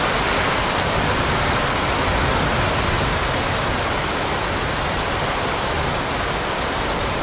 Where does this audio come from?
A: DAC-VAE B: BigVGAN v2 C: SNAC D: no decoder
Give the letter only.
D